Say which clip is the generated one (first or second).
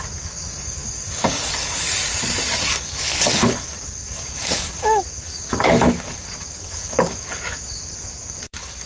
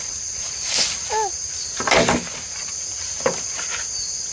first